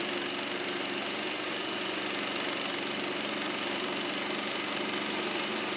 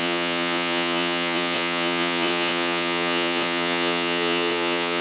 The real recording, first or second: first